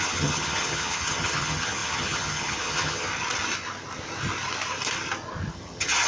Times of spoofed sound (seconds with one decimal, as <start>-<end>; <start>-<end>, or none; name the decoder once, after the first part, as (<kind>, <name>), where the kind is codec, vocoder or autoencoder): 0.0-3.1 (vocoder, HiFi-GAN); 5.5-6.1